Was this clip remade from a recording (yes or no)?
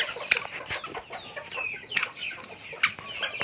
no